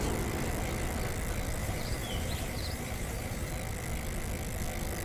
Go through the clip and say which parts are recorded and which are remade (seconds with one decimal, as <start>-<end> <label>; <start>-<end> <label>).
0.0-1.6 recorded; 1.6-3.5 remade; 3.5-5.0 recorded